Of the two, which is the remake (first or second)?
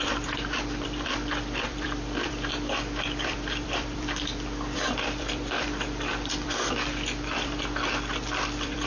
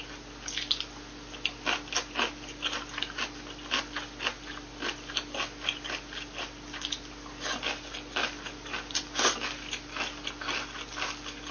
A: first